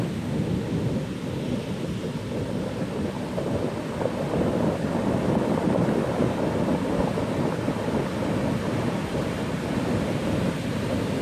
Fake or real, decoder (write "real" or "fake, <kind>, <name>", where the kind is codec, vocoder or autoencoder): real